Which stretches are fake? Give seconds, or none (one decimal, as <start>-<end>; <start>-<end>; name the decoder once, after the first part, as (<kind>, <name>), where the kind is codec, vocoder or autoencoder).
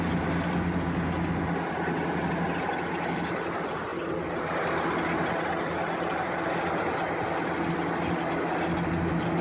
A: none